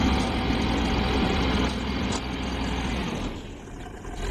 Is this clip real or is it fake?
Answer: real